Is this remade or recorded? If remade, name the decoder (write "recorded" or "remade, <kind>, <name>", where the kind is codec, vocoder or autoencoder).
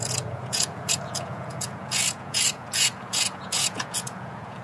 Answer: remade, vocoder, Vocos